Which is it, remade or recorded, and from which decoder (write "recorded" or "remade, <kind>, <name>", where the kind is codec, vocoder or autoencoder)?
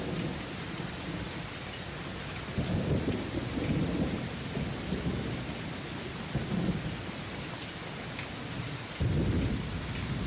recorded